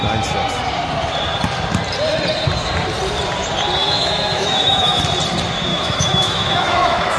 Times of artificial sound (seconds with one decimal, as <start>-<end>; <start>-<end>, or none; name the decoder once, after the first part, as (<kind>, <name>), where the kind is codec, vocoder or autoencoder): 3.8-5.0 (autoencoder, DAC-VAE); 5.7-7.2